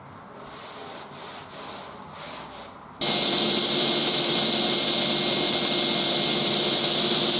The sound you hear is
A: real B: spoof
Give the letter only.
A